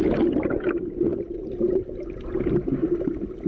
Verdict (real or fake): real